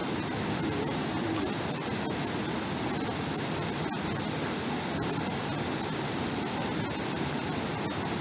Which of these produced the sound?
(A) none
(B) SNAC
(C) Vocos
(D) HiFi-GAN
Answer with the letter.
A